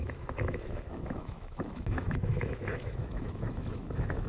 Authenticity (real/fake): fake